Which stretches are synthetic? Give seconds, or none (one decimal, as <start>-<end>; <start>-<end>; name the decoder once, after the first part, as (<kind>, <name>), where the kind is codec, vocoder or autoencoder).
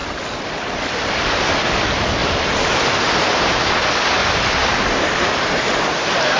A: 0.0-4.2 (vocoder, BigVGAN v2); 4.9-6.4